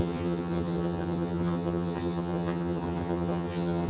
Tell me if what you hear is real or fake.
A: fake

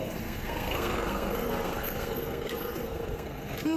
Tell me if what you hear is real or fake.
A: fake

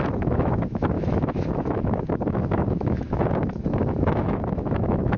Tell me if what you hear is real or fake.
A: fake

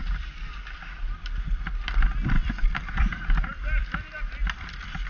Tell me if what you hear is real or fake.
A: real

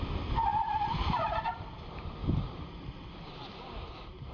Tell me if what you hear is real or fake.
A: real